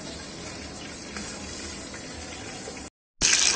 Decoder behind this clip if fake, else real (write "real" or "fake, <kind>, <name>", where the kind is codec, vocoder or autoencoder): real